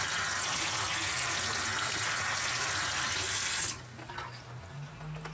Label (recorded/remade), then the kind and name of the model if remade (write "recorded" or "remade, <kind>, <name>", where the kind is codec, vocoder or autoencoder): recorded